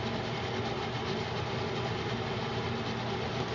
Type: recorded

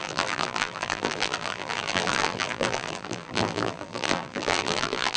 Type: remade